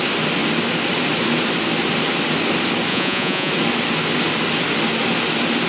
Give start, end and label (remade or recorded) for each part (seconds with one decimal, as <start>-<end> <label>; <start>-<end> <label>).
0.0-2.9 recorded; 2.9-3.5 remade; 3.5-5.7 recorded